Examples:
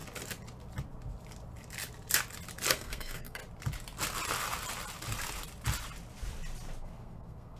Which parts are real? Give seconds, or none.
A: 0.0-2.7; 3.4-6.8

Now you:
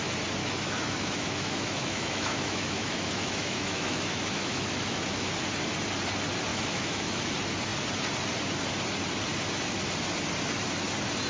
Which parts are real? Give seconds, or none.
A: 0.0-0.4; 5.3-6.5; 7.2-11.3

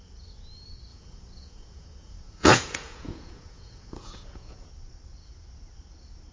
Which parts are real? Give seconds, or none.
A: 0.0-0.9; 4.7-6.3

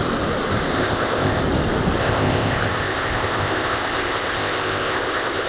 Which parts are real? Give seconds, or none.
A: 0.0-0.7; 1.4-2.0

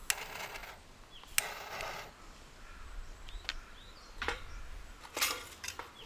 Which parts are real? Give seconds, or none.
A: 0.0-6.1

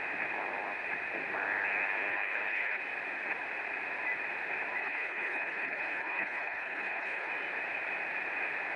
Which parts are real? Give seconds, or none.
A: 0.0-2.1; 2.8-4.8; 7.3-8.8